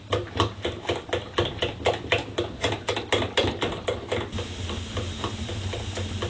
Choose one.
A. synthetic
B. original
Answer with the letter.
B